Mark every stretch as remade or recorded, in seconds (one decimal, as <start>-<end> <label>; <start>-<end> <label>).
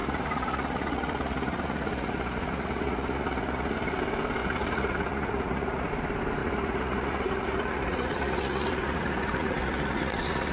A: 0.0-4.0 remade; 4.0-4.4 recorded; 4.4-5.9 remade; 5.9-6.4 recorded; 6.4-10.5 remade